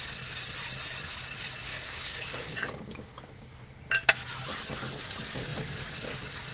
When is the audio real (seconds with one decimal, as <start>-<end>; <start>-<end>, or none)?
0.0-1.7; 3.5-6.5